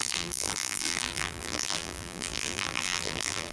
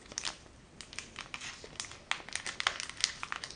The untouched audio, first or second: second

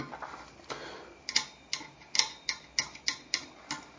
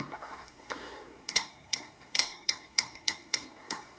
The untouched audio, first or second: first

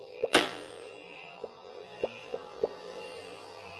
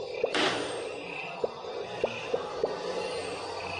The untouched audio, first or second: second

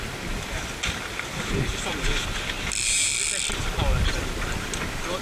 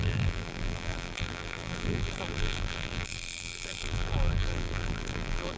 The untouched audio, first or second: first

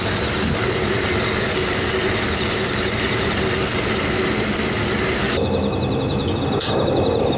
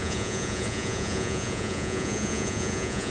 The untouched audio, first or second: first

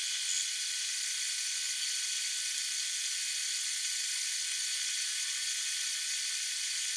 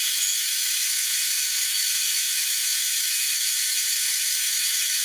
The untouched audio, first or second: first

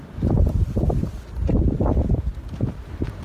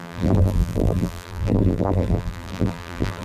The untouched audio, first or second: first